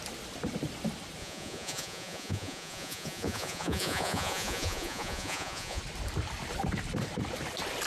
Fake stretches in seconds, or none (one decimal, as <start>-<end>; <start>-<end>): 1.2-5.8